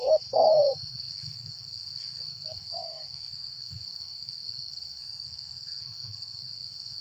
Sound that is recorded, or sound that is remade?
remade